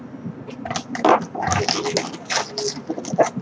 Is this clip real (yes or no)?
yes